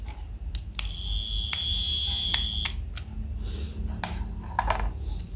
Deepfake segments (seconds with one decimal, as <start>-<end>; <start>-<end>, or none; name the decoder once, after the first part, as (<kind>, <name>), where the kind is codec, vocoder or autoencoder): none